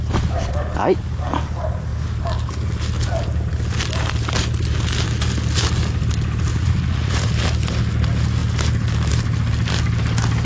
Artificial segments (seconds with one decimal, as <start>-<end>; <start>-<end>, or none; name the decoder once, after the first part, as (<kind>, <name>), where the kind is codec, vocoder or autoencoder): 6.5-7.3 (vocoder, Vocos)